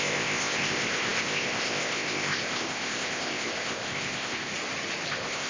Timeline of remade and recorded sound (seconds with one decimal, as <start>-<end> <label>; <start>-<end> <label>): 0.0-4.5 remade; 4.5-5.1 recorded; 5.1-5.5 remade